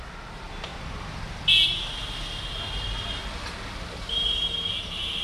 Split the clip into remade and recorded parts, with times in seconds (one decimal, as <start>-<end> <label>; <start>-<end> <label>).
0.0-5.2 recorded